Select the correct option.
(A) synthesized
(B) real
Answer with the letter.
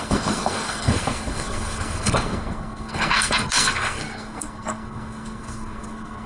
A